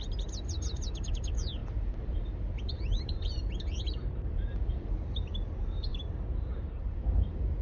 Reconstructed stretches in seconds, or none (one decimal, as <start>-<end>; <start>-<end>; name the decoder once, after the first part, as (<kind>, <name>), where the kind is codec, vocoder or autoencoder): 0.0-1.1 (vocoder, BigVGAN v2); 1.6-5.0; 5.9-7.0